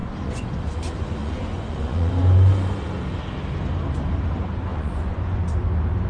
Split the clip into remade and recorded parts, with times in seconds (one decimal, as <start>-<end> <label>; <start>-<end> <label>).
0.0-0.6 remade; 0.6-1.2 recorded; 1.2-2.1 remade; 2.1-4.7 recorded; 4.7-5.4 remade; 5.4-6.1 recorded